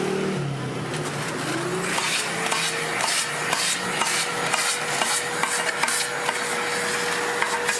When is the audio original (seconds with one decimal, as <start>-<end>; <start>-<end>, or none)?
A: 0.0-7.8